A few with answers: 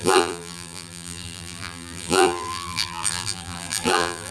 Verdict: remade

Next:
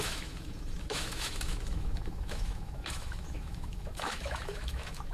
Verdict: remade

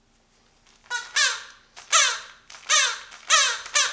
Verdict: recorded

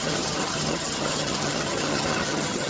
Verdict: remade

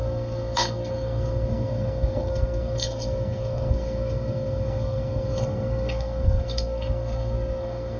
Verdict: remade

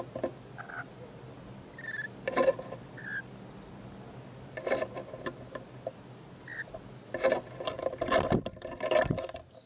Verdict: recorded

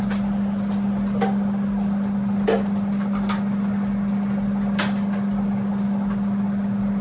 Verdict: recorded